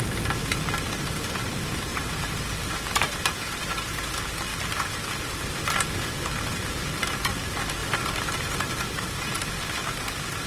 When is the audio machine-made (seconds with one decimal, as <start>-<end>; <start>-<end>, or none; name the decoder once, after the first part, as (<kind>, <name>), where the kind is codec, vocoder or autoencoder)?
1.9-3.7 (vocoder, BigVGAN v2); 4.5-5.6; 7.8-8.8